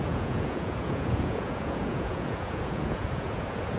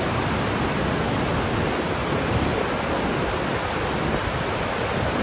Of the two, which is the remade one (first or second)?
first